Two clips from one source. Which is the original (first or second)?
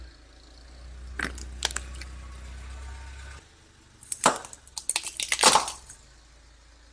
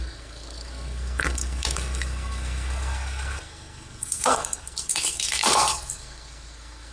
first